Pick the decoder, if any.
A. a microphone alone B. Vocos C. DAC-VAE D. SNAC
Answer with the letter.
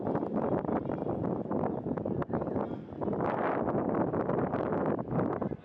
A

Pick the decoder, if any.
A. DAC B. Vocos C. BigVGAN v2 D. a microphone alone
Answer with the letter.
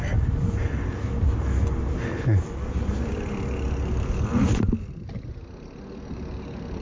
D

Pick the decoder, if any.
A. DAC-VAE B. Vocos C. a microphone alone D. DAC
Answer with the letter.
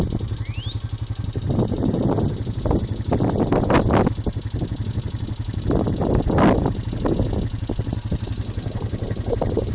C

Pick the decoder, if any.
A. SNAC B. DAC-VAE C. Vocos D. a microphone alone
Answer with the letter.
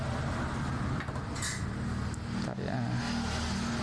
D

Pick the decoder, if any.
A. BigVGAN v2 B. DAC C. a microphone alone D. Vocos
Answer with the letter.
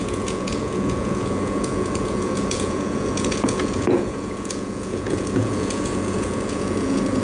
D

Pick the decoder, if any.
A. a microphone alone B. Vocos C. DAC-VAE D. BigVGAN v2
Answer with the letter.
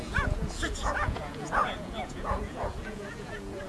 B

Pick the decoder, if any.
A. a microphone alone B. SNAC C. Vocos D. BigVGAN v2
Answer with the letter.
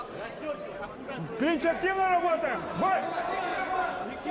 A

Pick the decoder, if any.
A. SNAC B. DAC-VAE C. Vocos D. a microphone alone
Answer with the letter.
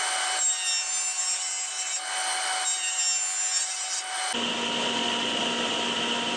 D